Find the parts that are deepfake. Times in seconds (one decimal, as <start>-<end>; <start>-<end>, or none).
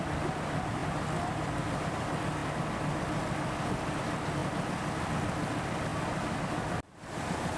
none